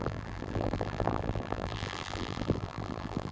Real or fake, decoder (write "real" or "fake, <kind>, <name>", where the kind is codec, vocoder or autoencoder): fake, vocoder, BigVGAN v2